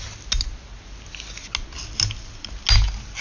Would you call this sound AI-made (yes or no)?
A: no